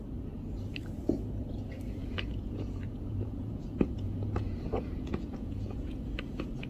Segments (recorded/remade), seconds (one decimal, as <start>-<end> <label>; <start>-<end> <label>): 0.0-2.0 recorded; 2.0-6.0 remade; 6.0-6.7 recorded